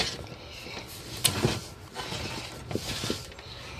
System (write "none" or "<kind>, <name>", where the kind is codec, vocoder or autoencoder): none